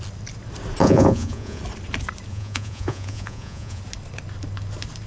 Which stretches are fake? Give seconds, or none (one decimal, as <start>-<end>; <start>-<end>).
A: 0.8-1.6; 2.3-3.8